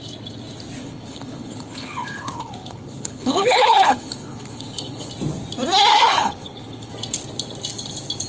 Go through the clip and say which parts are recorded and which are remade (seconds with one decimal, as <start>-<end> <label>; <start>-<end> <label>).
0.0-0.8 recorded; 0.8-5.1 remade; 5.1-5.9 recorded; 5.9-6.9 remade; 6.9-8.3 recorded